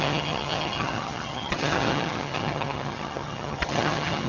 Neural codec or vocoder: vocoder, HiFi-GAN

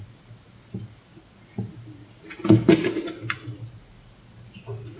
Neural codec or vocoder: none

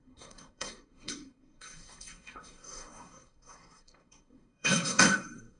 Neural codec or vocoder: codec, SNAC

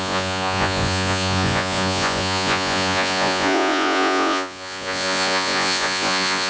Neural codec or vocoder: vocoder, Vocos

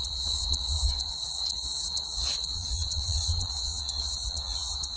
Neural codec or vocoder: vocoder, Vocos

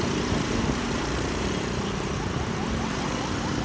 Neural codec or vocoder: vocoder, BigVGAN v2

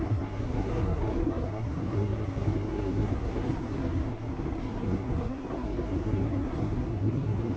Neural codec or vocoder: codec, SNAC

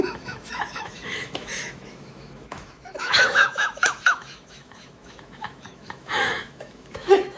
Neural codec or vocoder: autoencoder, DAC-VAE